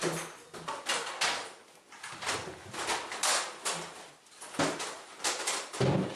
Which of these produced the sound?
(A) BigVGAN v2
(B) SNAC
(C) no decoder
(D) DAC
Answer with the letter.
C